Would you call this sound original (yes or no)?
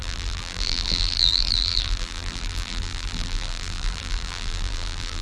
no